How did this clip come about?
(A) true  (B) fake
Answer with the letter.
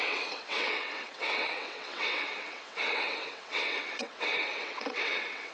B